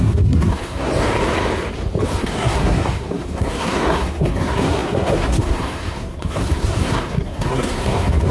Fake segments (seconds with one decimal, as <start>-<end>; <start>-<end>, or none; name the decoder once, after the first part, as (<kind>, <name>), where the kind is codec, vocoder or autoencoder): 0.0-0.9 (codec, SNAC); 2.2-8.3